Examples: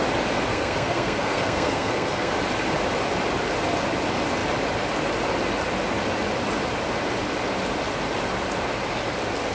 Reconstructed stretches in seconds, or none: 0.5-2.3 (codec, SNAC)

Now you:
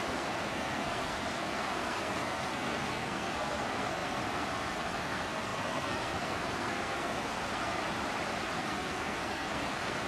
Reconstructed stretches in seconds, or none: 0.0-7.8 (codec, SNAC); 8.6-10.1

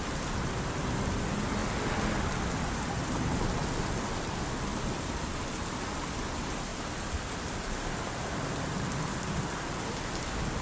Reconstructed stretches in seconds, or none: none

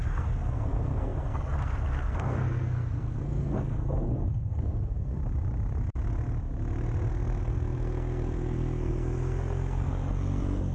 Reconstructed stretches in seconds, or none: 0.0-5.2 (codec, SNAC); 7.1-10.7

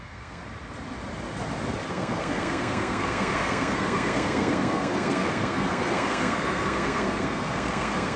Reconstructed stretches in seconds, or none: 0.0-0.4 (codec, SNAC); 1.9-8.2

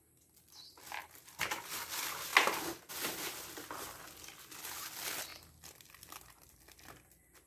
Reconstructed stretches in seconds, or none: none